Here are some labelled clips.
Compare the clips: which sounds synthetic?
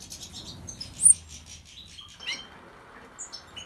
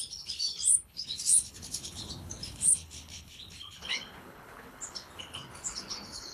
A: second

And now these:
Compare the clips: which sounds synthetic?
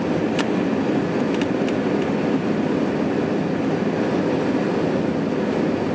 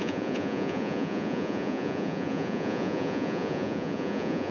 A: second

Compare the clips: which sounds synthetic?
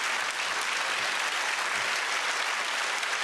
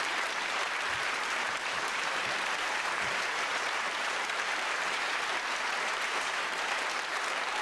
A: second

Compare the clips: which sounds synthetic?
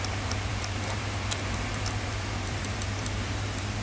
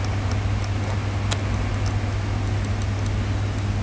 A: first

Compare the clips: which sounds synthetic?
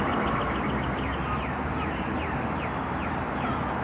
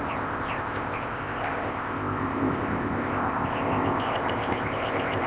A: second